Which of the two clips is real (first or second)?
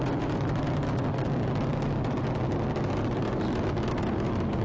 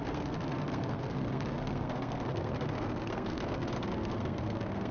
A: first